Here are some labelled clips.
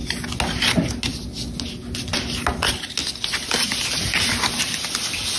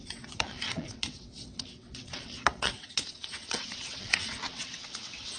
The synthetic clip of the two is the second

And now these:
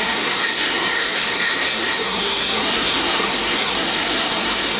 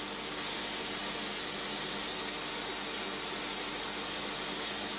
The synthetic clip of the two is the first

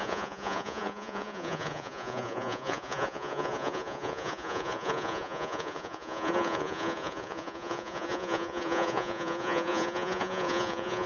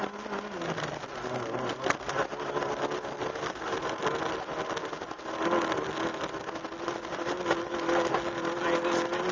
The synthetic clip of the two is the first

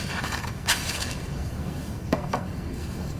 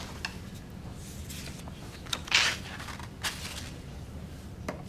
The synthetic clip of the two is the first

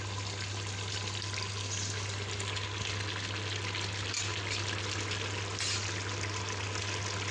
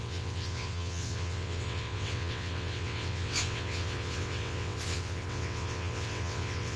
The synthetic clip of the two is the second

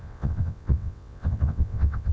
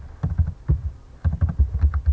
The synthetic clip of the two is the first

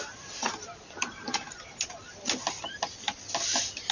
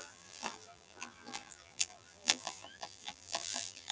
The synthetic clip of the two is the second